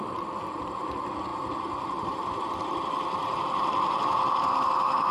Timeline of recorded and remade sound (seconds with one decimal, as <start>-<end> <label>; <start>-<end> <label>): 0.0-1.3 recorded; 1.3-2.5 remade; 2.5-3.2 recorded; 3.2-4.0 remade; 4.0-5.1 recorded